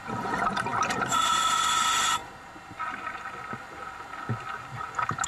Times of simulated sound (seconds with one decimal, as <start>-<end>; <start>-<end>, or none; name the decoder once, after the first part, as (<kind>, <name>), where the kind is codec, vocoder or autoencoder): none